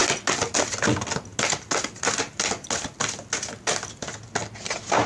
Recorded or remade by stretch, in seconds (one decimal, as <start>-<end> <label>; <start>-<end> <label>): 0.0-5.1 recorded